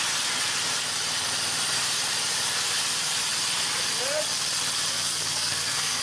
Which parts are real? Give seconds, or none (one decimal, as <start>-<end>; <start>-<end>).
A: 0.0-4.9